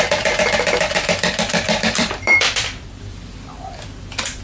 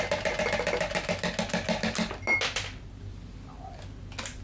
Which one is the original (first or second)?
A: second